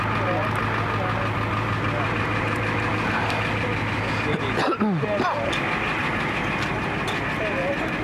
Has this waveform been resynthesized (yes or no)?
no